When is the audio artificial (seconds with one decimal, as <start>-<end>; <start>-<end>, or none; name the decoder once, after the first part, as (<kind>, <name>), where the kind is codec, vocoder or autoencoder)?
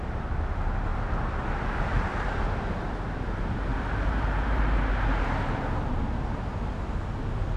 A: 0.9-4.6 (vocoder, BigVGAN v2)